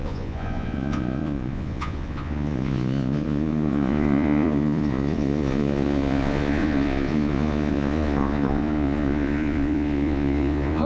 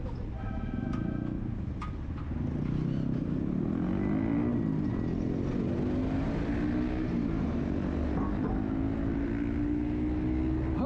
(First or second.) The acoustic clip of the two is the second